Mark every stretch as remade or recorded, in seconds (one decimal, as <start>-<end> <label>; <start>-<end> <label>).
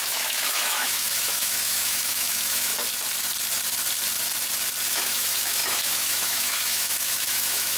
0.0-2.7 remade; 2.7-4.9 recorded; 4.9-7.8 remade